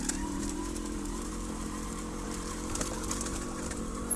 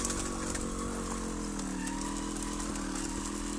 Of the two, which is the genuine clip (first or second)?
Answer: second